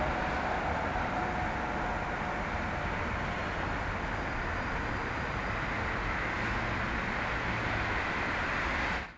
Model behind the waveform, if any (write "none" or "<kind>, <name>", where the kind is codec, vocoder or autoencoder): none